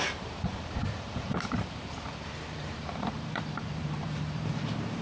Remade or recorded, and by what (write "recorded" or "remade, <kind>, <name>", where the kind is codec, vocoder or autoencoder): remade, vocoder, BigVGAN v2